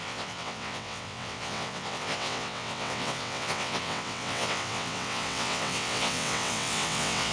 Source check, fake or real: fake